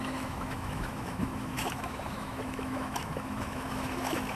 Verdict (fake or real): fake